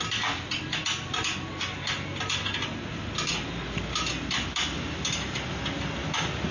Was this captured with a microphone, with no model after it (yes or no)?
yes